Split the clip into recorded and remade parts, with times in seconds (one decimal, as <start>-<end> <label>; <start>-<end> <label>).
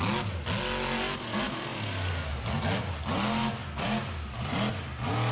0.0-5.3 recorded